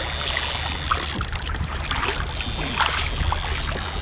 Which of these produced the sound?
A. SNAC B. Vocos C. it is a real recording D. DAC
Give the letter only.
C